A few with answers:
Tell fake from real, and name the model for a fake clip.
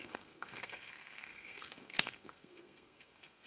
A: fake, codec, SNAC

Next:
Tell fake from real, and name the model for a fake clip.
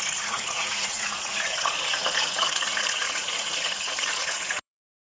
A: fake, vocoder, Vocos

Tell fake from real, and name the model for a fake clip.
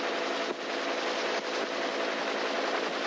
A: real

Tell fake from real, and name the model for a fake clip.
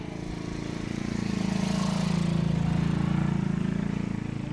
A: real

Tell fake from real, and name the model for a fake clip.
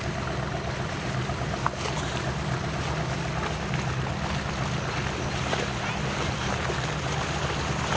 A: real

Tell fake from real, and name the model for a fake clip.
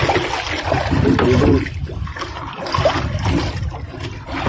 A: real